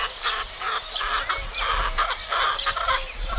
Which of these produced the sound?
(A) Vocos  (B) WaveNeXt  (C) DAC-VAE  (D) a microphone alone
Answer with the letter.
D